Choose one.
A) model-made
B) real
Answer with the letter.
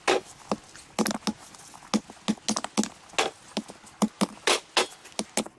B